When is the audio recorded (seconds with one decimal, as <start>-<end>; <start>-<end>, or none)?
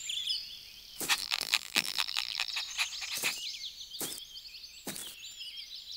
0.0-1.2; 2.5-6.0